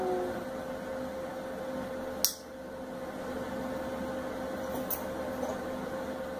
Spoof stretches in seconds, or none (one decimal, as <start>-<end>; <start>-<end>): none